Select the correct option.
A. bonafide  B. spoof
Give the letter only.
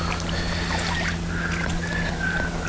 A